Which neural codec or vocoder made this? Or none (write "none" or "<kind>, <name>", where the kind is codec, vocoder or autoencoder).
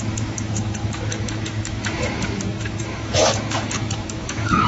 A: autoencoder, DAC-VAE